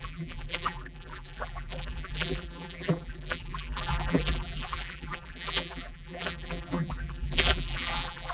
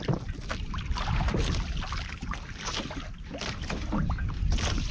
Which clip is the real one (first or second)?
second